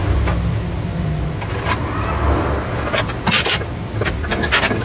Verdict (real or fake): real